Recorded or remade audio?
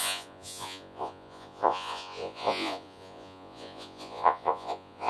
remade